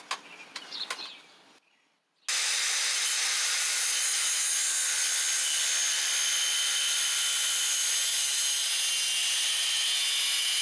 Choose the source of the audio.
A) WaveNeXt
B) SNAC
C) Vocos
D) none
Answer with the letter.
D